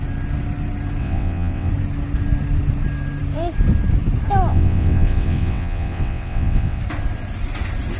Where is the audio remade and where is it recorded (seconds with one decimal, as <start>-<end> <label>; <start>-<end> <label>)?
0.0-1.0 recorded; 1.0-1.7 remade; 1.7-4.5 recorded; 4.5-6.8 remade; 6.8-8.0 recorded